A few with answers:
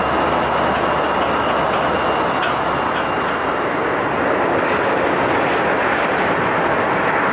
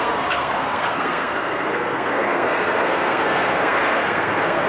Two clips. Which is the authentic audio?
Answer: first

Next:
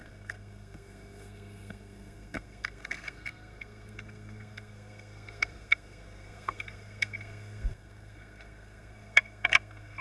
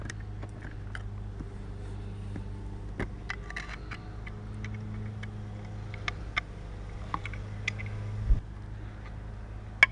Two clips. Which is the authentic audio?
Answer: second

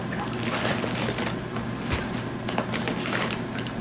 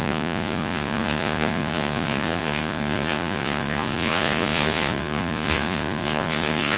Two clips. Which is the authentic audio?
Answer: first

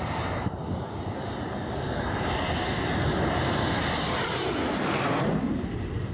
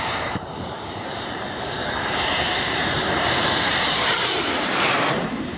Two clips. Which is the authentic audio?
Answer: first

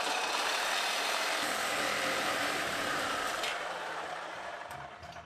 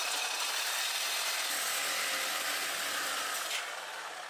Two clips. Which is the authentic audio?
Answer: second